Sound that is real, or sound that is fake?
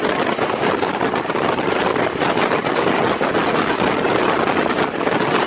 real